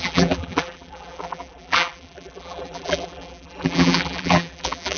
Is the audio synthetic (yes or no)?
yes